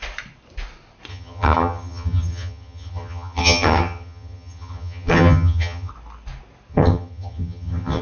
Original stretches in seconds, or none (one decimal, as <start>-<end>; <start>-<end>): 0.0-1.1; 5.9-6.7